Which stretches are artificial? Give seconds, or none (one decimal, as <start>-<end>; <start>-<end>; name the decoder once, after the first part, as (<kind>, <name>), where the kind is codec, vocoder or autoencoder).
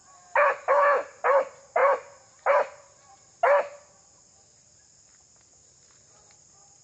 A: none